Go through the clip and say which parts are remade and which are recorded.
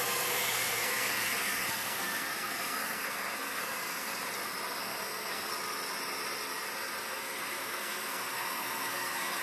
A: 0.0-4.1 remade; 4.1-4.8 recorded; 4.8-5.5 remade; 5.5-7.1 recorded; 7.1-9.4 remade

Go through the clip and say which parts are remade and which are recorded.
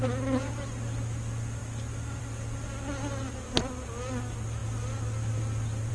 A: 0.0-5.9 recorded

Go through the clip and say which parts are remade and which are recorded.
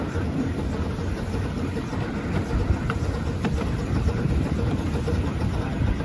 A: 0.0-6.0 recorded